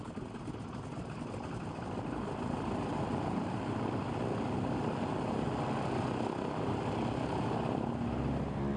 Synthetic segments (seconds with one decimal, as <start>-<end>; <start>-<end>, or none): none